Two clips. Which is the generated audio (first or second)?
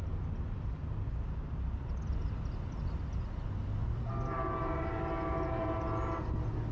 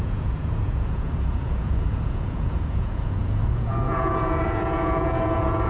second